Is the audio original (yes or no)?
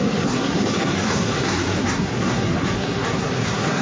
no